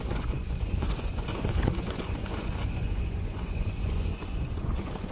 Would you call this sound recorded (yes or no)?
no